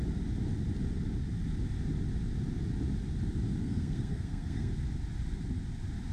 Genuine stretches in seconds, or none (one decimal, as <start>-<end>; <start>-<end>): 0.0-3.6; 4.7-6.1